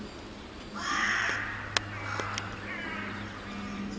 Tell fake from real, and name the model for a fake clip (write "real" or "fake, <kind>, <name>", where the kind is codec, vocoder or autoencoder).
real